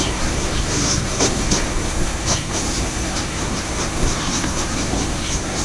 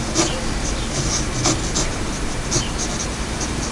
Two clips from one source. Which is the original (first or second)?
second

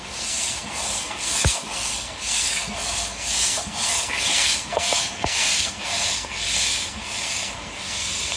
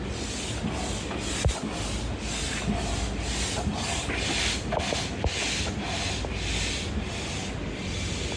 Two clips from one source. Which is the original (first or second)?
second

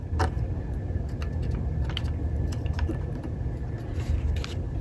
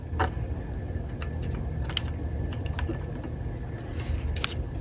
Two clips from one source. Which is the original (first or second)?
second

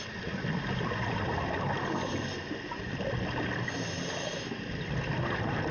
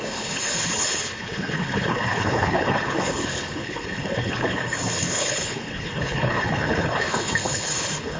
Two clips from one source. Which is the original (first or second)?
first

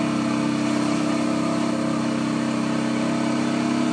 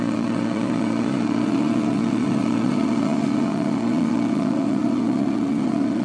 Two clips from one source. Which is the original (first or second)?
first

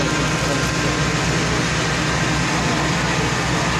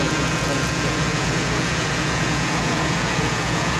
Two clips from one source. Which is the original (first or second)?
first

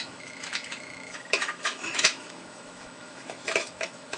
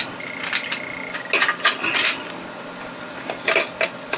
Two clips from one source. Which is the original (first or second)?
second